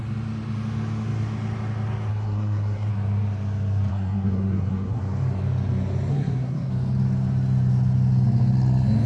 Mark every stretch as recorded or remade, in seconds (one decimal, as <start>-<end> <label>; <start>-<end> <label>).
0.0-2.1 recorded; 2.1-2.9 remade; 2.9-3.9 recorded; 3.9-5.0 remade; 5.0-6.1 recorded; 6.1-6.7 remade; 6.7-9.1 recorded